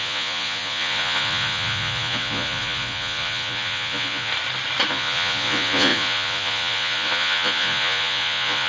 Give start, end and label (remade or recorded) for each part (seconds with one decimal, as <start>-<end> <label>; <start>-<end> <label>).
0.0-4.3 remade; 4.3-4.9 recorded; 4.9-8.7 remade